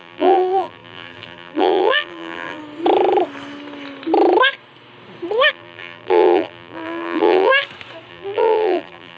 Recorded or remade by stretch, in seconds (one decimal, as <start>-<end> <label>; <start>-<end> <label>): 0.0-2.6 remade; 2.6-5.5 recorded; 5.5-7.5 remade; 7.5-8.1 recorded; 8.1-9.2 remade